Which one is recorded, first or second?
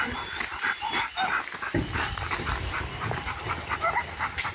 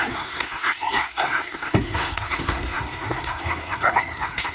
first